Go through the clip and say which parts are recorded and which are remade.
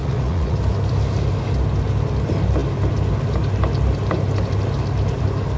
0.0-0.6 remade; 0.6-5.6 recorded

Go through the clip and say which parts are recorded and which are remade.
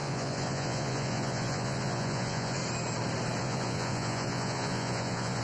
0.0-2.6 remade; 2.6-3.4 recorded; 3.4-5.4 remade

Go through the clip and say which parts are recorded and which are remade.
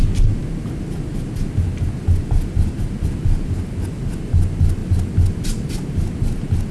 0.0-6.7 recorded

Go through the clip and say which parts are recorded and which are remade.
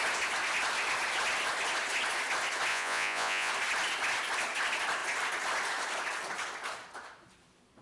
0.0-2.7 recorded; 2.7-3.5 remade; 3.5-7.8 recorded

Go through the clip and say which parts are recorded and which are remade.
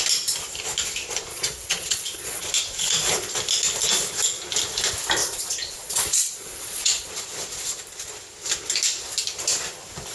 0.0-1.3 recorded; 1.3-2.4 remade; 2.4-5.2 recorded; 5.2-7.1 remade; 7.1-10.1 recorded